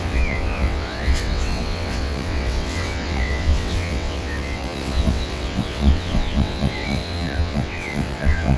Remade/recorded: remade